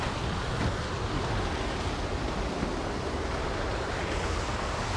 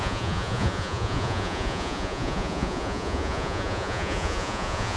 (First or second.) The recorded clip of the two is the first